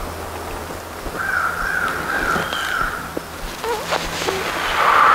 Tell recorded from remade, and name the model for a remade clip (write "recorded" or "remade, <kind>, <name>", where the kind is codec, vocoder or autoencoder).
recorded